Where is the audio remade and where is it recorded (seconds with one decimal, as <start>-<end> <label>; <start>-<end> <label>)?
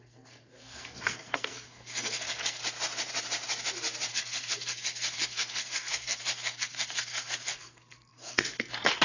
0.0-2.6 remade; 2.6-4.1 recorded; 4.1-9.0 remade